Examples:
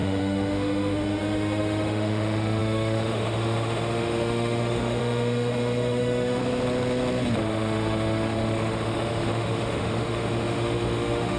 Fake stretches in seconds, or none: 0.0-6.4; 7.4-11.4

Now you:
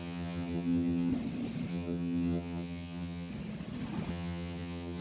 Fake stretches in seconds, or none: 0.0-1.1; 1.7-3.3; 4.1-5.0